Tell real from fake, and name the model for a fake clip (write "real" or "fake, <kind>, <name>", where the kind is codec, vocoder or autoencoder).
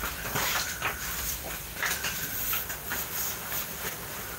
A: real